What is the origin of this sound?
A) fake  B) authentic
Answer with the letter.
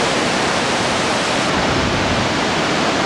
A